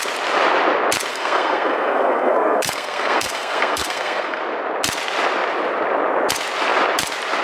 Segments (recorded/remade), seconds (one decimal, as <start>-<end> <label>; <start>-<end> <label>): 0.0-1.1 recorded; 1.1-4.4 remade; 4.4-7.4 recorded